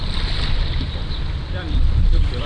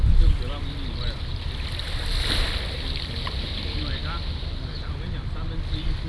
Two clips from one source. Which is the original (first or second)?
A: second